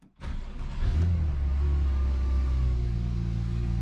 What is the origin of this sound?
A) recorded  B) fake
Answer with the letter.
B